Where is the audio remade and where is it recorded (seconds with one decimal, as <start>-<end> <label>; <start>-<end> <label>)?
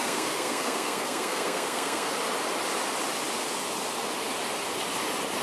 0.0-2.1 remade; 2.1-5.4 recorded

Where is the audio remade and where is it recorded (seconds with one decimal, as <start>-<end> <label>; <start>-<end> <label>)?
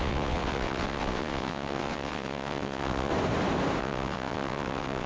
0.0-3.1 remade; 3.1-3.8 recorded; 3.8-5.1 remade